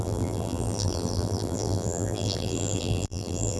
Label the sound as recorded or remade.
remade